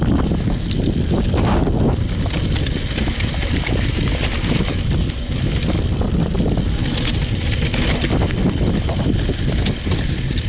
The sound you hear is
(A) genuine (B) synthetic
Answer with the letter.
A